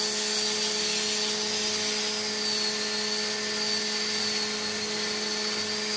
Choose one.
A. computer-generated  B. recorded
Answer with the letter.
B